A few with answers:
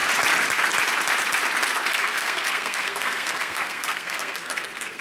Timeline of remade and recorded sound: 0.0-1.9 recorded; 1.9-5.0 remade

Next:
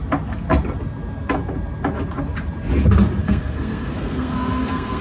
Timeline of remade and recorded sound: 0.0-3.2 recorded; 3.2-5.0 remade

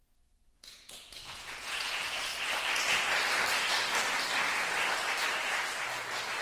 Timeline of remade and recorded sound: 0.0-2.3 remade; 2.3-6.4 recorded

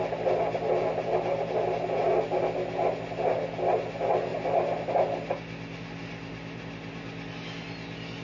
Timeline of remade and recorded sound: 0.0-8.2 recorded